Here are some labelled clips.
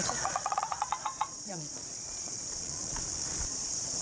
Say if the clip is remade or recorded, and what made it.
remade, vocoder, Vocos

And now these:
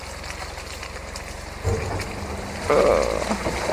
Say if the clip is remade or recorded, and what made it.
recorded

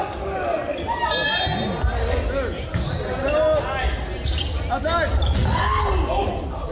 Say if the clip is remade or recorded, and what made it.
recorded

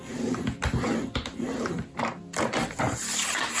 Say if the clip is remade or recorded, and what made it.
recorded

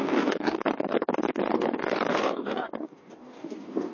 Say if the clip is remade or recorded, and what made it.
remade, codec, DAC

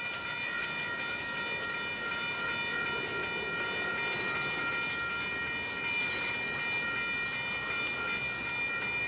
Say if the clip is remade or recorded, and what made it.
recorded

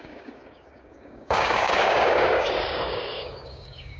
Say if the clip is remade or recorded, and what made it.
remade, codec, DAC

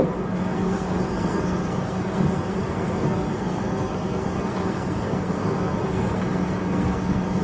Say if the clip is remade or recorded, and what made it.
remade, codec, SNAC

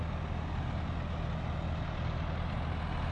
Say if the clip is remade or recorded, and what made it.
recorded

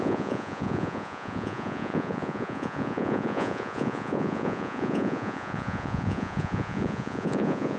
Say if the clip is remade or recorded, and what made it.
remade, vocoder, Vocos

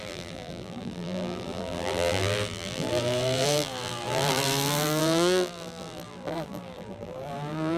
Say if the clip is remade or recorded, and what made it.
remade, vocoder, BigVGAN v2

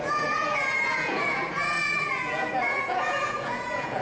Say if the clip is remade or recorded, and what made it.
remade, vocoder, Vocos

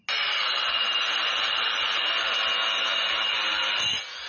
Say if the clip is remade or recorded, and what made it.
recorded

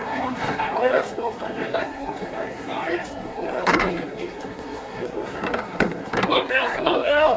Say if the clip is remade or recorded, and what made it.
remade, codec, SNAC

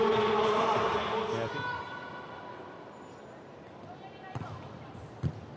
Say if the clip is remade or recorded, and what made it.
recorded